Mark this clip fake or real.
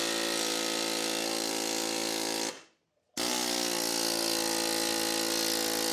real